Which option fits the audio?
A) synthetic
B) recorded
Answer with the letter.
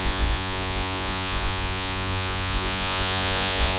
A